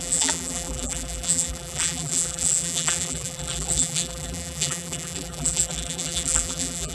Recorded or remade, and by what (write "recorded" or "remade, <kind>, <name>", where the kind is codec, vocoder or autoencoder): remade, vocoder, BigVGAN v2